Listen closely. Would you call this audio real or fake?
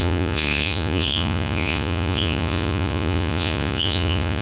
fake